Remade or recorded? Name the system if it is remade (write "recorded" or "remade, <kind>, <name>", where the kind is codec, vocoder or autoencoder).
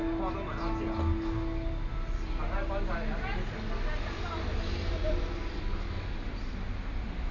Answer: recorded